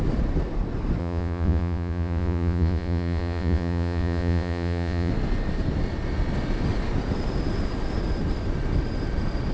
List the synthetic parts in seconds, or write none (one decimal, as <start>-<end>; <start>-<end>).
1.0-5.1